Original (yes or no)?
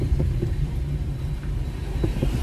no